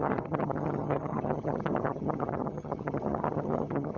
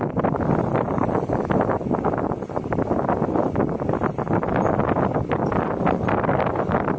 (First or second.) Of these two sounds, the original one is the second